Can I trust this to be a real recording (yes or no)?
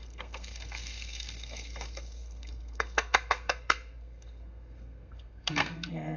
no